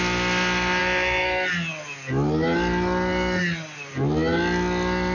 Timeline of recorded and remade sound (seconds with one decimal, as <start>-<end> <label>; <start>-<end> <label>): 0.0-5.1 recorded